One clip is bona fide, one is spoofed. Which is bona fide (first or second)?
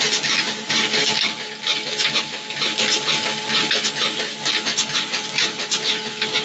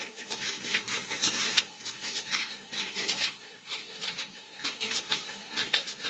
first